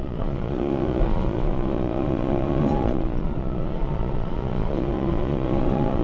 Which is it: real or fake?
fake